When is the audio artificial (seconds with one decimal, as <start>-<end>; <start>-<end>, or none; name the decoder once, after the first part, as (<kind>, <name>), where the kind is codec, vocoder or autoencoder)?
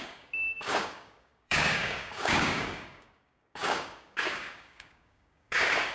0.0-5.9 (codec, DAC)